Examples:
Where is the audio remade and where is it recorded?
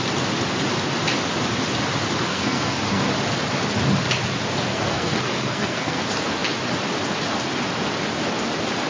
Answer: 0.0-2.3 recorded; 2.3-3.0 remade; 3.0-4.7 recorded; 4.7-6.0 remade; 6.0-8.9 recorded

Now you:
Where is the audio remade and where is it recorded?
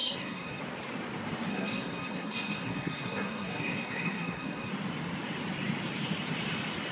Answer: 0.0-0.6 remade; 0.6-1.5 recorded; 1.5-4.7 remade; 4.7-6.9 recorded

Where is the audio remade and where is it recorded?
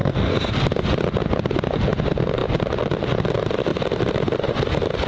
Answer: 0.0-0.5 remade; 0.5-5.1 recorded